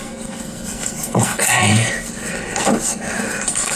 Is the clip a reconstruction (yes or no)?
yes